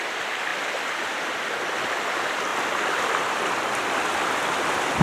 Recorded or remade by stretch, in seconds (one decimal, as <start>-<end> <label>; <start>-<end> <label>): 0.0-2.5 recorded; 2.5-3.7 remade; 3.7-5.0 recorded